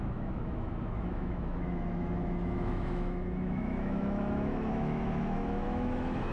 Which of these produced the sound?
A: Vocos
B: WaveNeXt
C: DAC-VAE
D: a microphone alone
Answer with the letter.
C